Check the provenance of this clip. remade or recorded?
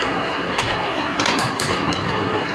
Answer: remade